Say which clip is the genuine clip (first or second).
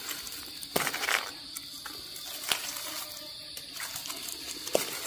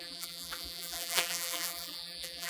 first